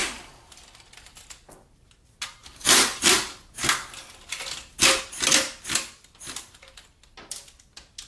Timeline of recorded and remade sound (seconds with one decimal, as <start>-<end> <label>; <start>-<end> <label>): 0.0-8.1 recorded